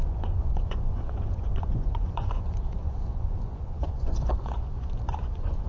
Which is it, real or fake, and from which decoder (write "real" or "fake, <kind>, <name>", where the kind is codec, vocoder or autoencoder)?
fake, vocoder, Vocos